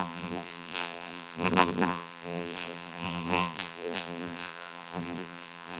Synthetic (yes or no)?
yes